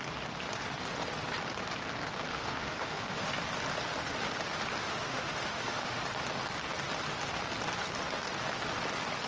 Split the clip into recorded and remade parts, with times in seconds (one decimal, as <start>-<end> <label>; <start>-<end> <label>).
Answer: 0.0-2.3 recorded; 2.3-3.3 remade; 3.3-4.8 recorded; 4.8-6.0 remade; 6.0-9.3 recorded